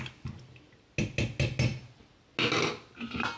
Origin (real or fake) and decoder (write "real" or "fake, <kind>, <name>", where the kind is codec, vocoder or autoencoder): real